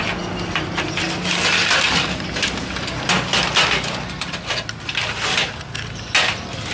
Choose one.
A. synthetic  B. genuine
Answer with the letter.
B